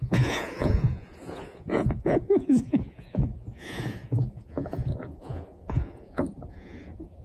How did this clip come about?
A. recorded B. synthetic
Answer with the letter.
B